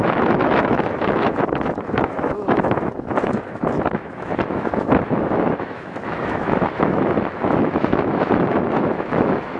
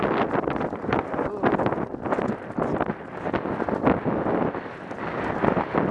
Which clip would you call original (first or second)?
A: second